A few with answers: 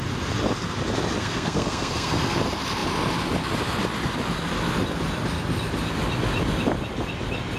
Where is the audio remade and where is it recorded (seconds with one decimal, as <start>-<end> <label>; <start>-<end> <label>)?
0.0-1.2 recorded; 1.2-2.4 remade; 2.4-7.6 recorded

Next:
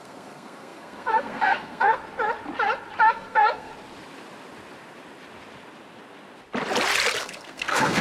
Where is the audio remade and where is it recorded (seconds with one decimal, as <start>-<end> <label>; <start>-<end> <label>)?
0.0-2.0 remade; 2.0-3.1 recorded; 3.1-3.7 remade; 3.7-7.2 recorded; 7.2-8.0 remade

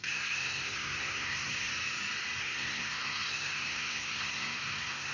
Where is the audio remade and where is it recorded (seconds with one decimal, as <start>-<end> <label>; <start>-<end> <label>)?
0.0-1.7 remade; 1.7-2.4 recorded; 2.4-5.1 remade